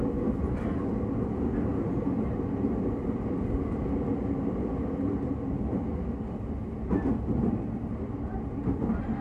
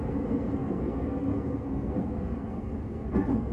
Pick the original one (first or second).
first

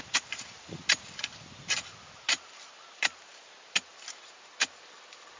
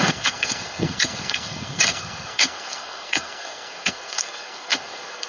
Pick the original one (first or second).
first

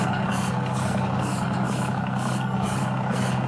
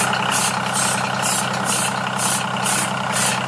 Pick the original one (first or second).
second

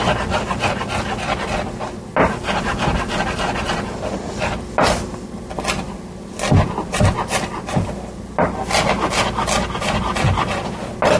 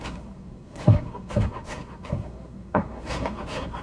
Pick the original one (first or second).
first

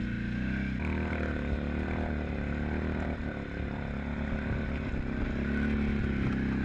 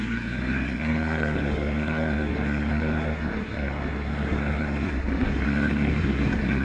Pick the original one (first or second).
first